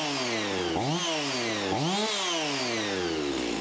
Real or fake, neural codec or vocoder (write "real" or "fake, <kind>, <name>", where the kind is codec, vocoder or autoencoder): real